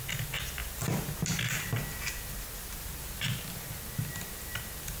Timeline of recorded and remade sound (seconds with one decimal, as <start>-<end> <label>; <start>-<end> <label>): 0.0-5.0 recorded